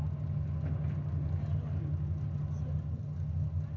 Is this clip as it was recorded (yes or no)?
yes